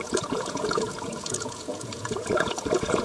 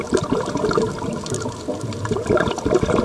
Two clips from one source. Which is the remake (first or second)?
first